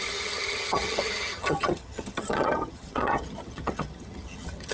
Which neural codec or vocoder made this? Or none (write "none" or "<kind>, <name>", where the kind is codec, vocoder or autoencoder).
vocoder, HiFi-GAN